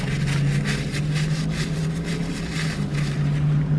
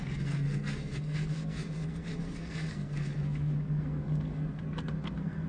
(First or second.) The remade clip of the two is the second